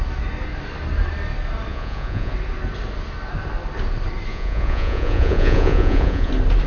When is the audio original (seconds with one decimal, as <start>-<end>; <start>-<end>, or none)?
0.0-1.7; 2.3-4.3; 6.3-6.7